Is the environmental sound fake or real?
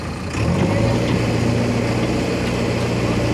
real